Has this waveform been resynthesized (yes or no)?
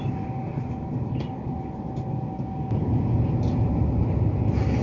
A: no